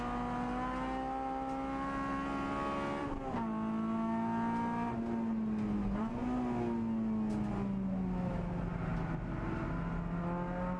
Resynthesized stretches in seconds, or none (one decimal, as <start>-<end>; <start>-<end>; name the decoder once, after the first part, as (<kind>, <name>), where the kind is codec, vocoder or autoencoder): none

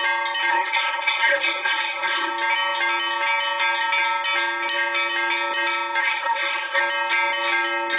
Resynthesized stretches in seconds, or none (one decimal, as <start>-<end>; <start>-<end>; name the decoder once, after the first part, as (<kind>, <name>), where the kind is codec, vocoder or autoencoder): 0.5-2.3 (codec, SNAC); 6.0-6.8

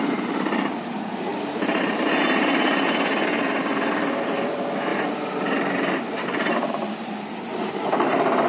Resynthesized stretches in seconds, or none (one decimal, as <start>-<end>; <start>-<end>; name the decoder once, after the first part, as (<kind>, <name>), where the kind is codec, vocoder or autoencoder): 0.0-8.5 (vocoder, BigVGAN v2)